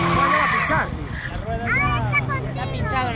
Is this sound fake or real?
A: real